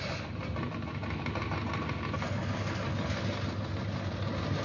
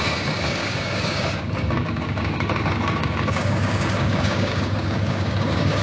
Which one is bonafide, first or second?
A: first